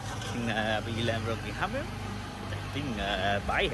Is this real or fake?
real